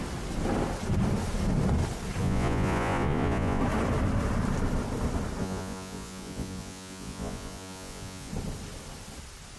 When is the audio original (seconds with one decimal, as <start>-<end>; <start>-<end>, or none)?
0.0-2.2; 3.6-5.4; 8.3-9.6